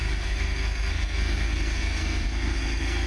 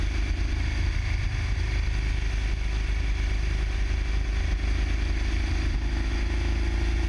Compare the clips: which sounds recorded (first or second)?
second